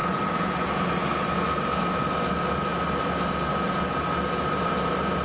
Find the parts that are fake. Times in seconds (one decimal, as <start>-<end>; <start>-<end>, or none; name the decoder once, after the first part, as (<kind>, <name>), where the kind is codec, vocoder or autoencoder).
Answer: none

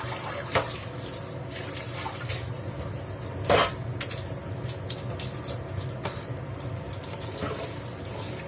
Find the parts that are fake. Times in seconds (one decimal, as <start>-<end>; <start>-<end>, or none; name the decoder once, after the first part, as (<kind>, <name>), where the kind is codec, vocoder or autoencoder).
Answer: none

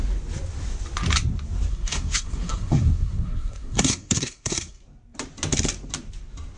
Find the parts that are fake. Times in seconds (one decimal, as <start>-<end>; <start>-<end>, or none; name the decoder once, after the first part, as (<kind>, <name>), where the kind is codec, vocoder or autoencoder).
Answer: 1.7-4.8 (codec, SNAC)

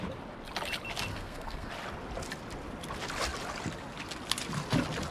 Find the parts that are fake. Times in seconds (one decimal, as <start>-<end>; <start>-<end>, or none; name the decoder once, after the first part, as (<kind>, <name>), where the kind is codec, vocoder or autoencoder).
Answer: 1.1-1.7 (codec, SNAC)